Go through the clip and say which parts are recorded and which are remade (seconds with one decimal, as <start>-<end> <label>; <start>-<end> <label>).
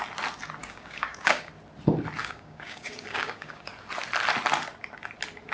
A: 0.0-0.6 recorded; 0.6-1.5 remade; 1.5-2.2 recorded; 2.2-3.7 remade; 3.7-5.5 recorded